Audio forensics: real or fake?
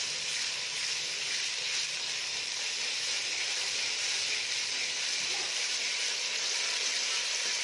real